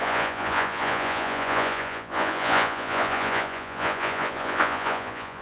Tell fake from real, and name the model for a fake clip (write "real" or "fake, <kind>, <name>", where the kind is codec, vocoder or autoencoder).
fake, vocoder, Vocos